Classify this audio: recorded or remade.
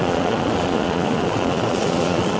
remade